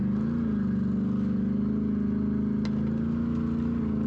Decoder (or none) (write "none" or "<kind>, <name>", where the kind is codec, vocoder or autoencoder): none